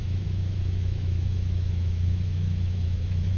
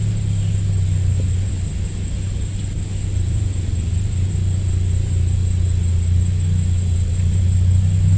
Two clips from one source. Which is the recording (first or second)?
second